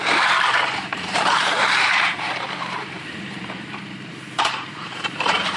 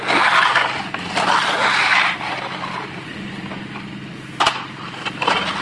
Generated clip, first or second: first